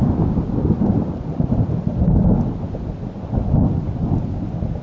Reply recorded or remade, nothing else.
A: recorded